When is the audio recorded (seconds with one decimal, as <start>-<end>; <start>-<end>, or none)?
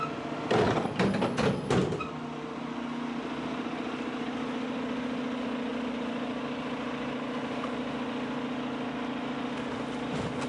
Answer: 0.0-10.5